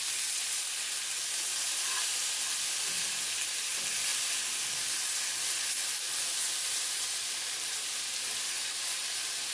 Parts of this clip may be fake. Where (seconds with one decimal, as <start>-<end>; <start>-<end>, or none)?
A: none